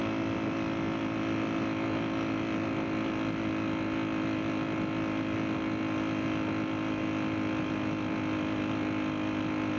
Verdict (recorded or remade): recorded